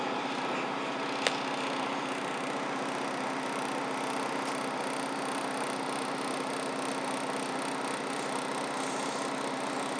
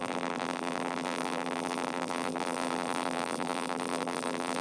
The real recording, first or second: first